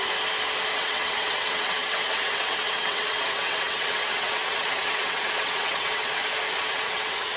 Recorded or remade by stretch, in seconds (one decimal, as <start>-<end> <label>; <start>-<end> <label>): 0.0-0.7 recorded; 0.7-6.2 remade; 6.2-6.7 recorded; 6.7-7.4 remade